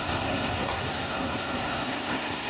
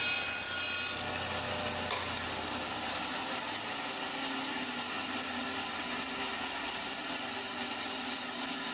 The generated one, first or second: first